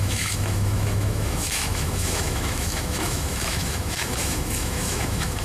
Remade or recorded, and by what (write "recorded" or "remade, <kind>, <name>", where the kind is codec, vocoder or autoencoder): remade, autoencoder, DAC-VAE